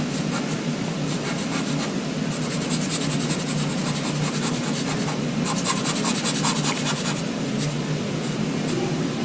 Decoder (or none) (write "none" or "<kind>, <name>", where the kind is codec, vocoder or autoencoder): none